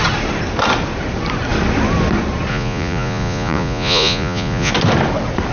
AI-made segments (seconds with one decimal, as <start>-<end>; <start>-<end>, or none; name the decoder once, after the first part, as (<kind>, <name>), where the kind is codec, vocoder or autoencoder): 2.5-4.7 (vocoder, Vocos)